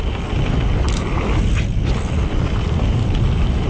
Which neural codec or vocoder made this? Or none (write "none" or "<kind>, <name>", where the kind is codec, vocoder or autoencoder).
none